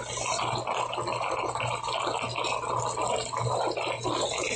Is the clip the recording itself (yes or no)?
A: yes